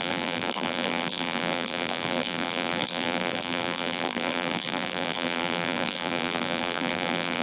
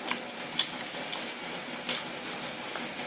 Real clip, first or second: second